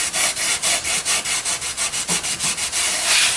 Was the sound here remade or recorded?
recorded